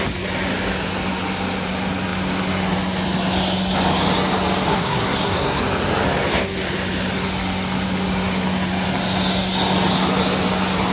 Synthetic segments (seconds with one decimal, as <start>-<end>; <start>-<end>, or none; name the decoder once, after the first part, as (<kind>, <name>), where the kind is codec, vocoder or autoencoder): 4.7-5.6 (codec, SNAC)